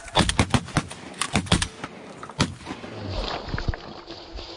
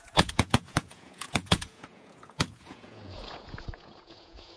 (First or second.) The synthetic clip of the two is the second